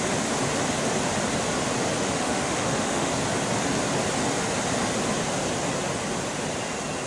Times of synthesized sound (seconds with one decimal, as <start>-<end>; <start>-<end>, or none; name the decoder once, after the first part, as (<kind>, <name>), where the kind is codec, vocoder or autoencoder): 2.0-3.1 (autoencoder, DAC-VAE)